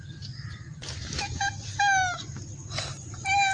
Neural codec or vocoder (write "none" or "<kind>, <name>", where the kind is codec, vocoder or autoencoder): none